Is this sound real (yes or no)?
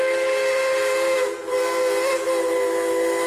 yes